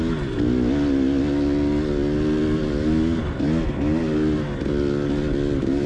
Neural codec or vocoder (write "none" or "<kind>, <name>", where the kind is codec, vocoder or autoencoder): none